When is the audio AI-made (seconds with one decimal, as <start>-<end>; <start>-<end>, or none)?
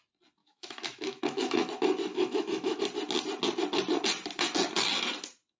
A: 0.4-1.7; 2.1-2.8